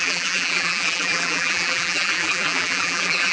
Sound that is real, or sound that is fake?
fake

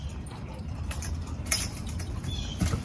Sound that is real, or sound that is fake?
fake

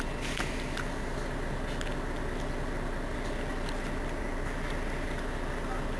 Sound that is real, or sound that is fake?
real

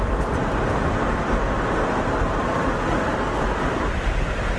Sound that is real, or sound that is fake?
real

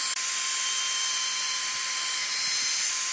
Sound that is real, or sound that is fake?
fake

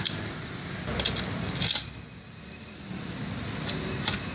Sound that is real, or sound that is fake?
real